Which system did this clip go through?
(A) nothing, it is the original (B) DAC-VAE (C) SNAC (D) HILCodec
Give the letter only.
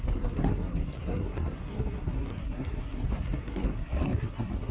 C